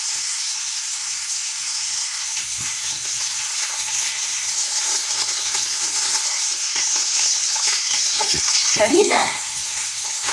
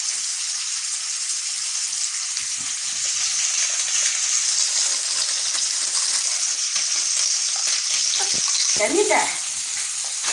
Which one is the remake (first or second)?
first